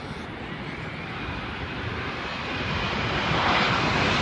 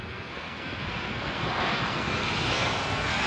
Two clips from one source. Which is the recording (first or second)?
first